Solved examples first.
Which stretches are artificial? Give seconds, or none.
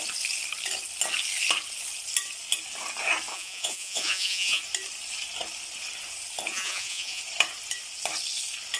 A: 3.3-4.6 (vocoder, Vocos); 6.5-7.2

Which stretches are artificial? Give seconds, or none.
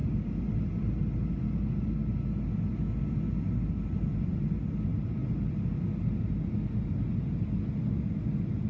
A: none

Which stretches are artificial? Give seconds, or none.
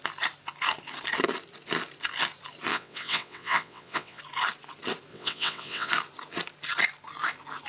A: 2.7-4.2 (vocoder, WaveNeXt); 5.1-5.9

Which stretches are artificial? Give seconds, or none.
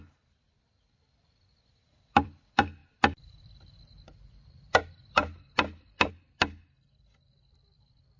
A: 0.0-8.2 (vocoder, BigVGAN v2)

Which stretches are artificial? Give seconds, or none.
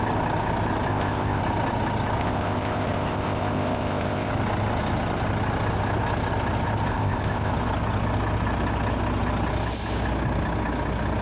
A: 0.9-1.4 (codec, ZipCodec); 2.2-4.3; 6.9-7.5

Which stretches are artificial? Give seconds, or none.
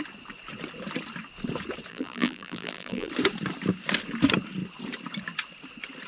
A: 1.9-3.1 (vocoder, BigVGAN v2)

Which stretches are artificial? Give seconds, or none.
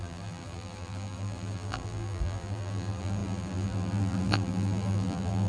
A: 0.0-5.5 (vocoder, BigVGAN v2)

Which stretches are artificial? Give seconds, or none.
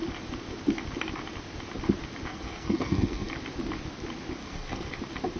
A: 2.3-3.3 (codec, SNAC); 4.4-5.0